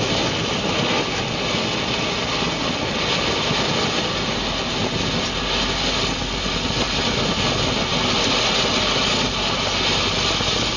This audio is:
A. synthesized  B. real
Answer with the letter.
B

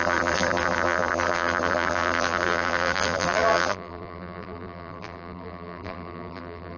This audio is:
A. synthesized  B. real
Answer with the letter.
A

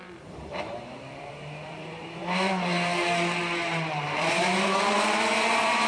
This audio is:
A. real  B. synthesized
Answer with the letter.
B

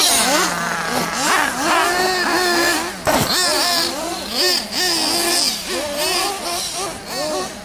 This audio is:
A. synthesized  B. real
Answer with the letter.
B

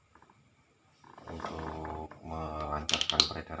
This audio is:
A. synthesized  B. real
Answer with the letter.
B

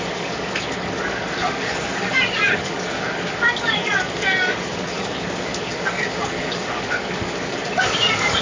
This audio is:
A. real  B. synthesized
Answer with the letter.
B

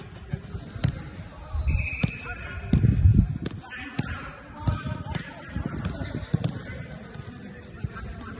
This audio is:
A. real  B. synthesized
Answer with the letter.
A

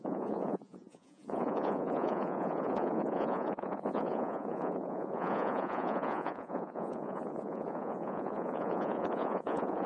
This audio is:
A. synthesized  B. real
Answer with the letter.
A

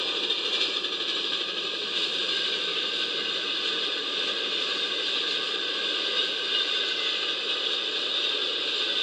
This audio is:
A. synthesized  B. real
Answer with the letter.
B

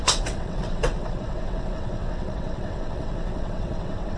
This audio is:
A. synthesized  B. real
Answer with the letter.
A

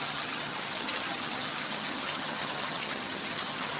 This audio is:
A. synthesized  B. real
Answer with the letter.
A